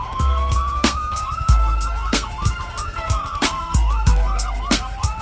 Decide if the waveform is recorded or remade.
remade